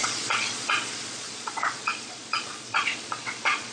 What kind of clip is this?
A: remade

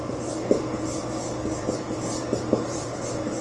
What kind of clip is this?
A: recorded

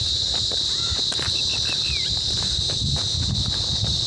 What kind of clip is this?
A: recorded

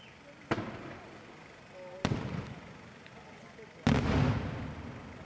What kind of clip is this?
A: recorded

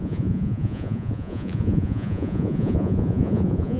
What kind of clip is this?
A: remade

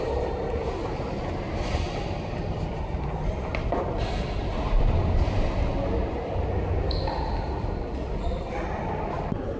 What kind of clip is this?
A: recorded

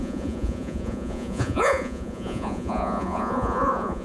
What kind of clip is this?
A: remade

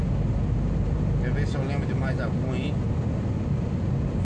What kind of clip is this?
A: recorded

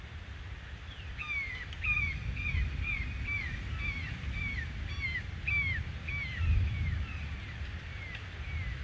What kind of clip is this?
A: recorded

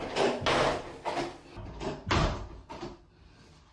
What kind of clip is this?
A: recorded